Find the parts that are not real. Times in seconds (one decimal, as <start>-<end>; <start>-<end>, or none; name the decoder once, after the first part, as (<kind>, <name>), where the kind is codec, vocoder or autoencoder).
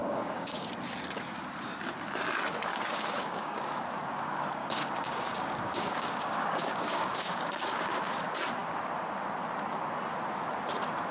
0.0-0.7 (codec, DAC); 2.7-3.7; 4.6-8.1